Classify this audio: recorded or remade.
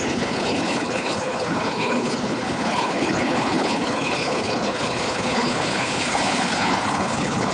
remade